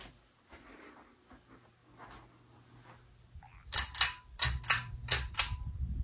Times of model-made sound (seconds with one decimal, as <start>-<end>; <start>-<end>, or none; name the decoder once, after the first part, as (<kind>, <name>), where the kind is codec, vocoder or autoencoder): none